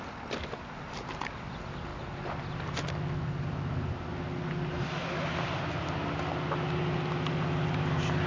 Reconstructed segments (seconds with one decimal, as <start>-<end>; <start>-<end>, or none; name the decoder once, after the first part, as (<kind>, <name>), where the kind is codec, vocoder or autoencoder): none